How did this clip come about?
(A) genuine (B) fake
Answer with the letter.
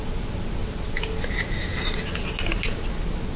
A